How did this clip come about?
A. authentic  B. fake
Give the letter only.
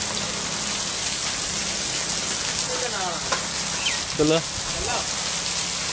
A